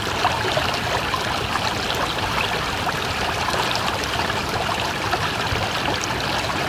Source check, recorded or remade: recorded